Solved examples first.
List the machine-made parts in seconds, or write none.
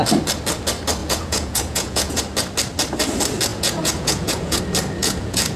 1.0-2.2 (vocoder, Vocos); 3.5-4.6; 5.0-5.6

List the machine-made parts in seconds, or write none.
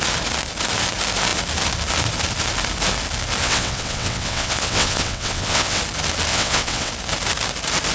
3.4-5.8 (vocoder, WaveNeXt); 6.3-6.9